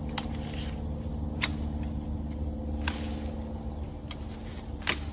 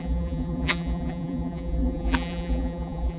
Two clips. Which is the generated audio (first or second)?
second